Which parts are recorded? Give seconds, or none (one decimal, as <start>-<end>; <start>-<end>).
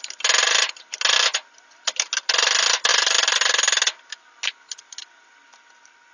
0.0-6.1